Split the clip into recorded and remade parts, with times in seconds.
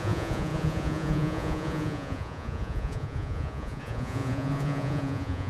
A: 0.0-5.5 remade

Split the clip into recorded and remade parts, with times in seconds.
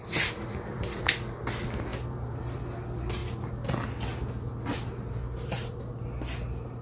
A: 0.0-1.0 remade; 1.0-1.9 recorded; 1.9-2.6 remade; 2.6-6.8 recorded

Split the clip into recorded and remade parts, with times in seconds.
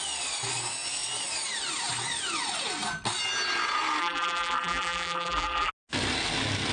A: 0.0-4.0 recorded; 4.0-5.7 remade; 5.7-6.7 recorded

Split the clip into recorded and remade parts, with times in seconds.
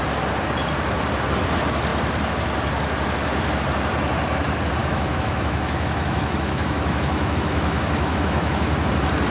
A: 0.0-4.8 recorded; 4.8-8.9 remade; 8.9-9.3 recorded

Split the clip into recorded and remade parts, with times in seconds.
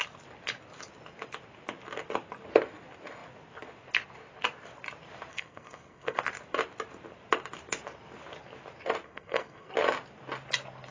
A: 0.0-5.3 recorded; 5.3-6.2 remade; 6.2-9.0 recorded; 9.0-9.7 remade; 9.7-10.9 recorded